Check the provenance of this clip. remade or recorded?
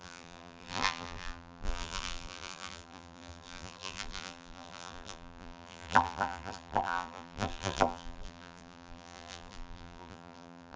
remade